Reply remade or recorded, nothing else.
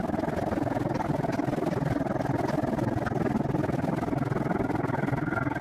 recorded